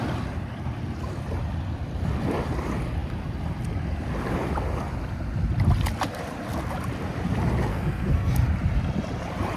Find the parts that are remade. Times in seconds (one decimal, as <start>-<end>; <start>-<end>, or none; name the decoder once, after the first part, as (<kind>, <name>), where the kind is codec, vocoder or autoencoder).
7.7-8.3 (codec, SNAC)